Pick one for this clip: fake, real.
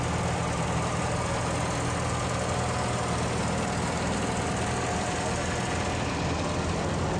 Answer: real